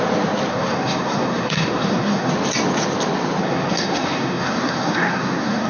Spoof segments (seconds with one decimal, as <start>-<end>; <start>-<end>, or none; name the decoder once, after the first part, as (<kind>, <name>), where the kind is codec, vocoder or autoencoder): 0.5-2.3 (codec, SNAC); 3.4-5.7